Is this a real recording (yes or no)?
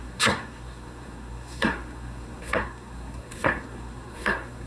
no